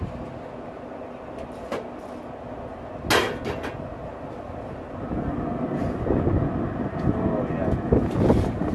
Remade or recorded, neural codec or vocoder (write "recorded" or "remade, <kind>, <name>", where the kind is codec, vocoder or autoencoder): recorded